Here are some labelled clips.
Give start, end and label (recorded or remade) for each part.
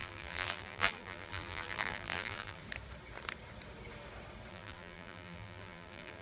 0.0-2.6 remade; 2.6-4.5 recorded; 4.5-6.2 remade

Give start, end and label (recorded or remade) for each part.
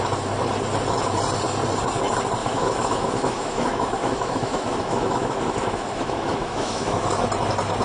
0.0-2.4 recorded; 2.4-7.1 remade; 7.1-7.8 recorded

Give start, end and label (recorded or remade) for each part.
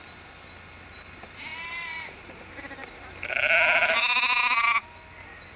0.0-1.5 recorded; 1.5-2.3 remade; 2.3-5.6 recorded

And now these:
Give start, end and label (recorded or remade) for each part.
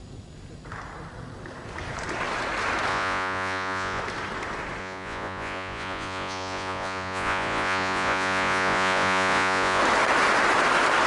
0.0-2.9 recorded; 2.9-4.0 remade; 4.0-4.8 recorded; 4.8-9.8 remade; 9.8-11.1 recorded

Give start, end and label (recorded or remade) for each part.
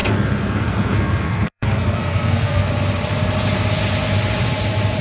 0.0-2.7 remade; 2.7-5.0 recorded